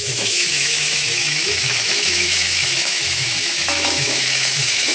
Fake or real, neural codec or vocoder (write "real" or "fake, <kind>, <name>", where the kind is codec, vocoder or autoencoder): fake, autoencoder, DAC-VAE